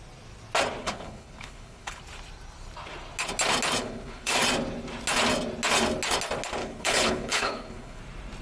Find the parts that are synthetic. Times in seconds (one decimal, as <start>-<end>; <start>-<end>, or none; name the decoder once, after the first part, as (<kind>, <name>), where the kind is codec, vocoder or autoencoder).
0.8-2.0 (codec, HILCodec); 3.8-4.4; 6.6-8.0